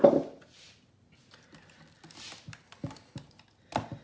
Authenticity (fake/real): real